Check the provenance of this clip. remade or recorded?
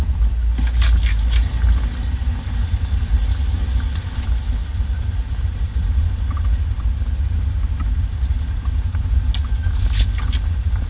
recorded